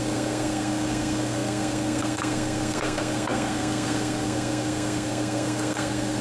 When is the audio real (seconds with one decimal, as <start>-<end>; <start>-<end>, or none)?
none